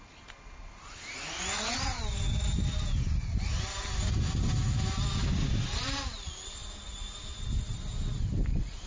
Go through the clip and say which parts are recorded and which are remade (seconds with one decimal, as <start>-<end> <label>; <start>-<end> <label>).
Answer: 0.0-8.9 recorded